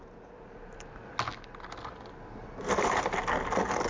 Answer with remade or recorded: recorded